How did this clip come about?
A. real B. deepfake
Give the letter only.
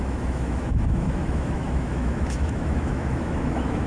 B